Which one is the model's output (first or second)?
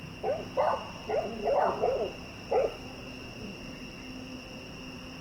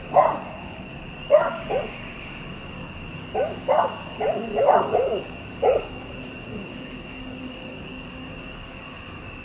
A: second